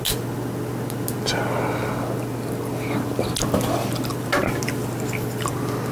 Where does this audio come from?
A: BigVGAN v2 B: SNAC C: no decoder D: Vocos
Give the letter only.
C